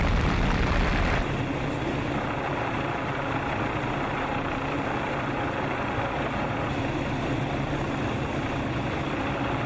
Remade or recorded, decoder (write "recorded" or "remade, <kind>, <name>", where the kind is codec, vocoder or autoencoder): recorded